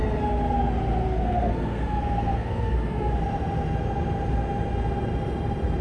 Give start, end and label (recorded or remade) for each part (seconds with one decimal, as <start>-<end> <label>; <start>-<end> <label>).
0.0-1.0 recorded; 1.0-3.1 remade; 3.1-5.8 recorded